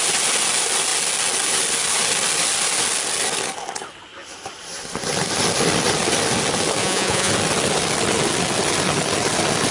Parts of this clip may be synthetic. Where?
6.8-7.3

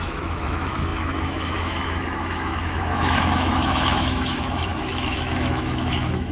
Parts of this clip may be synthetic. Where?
0.0-6.3